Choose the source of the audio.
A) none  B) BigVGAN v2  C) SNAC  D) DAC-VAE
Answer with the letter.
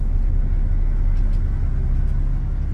A